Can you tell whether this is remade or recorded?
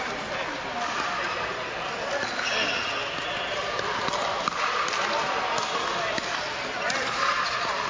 recorded